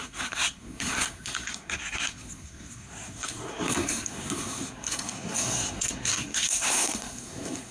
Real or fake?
fake